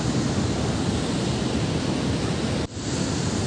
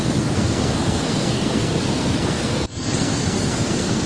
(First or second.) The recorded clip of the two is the first